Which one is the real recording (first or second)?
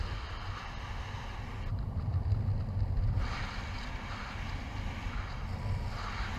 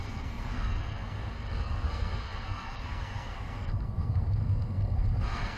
first